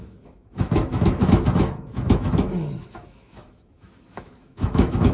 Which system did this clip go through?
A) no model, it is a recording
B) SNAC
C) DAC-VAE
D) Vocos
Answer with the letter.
C